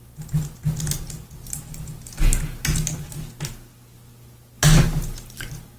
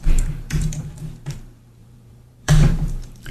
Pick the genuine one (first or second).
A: first